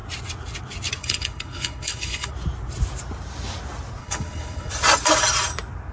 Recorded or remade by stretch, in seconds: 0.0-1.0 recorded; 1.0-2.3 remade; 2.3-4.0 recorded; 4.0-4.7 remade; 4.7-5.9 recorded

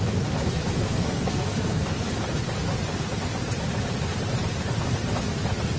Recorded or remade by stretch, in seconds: 0.0-0.8 recorded; 0.8-2.1 remade; 2.1-5.8 recorded

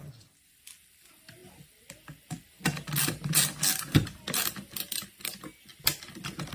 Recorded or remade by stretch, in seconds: 0.0-6.5 recorded

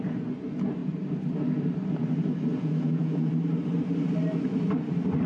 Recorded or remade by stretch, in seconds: 0.0-2.5 recorded; 2.5-3.3 remade; 3.3-5.3 recorded